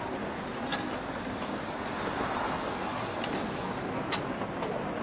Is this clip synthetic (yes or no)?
no